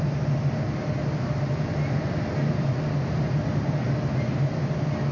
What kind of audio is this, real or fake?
real